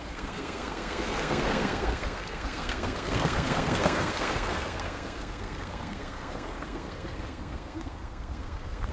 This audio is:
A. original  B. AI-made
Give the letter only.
B